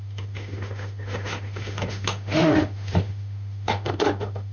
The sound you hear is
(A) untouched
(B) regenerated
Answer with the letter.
B